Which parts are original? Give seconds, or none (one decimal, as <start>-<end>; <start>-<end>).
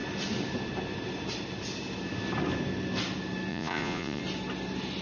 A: 0.0-3.5; 4.2-5.0